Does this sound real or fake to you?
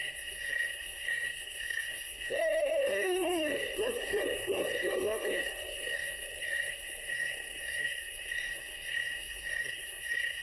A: fake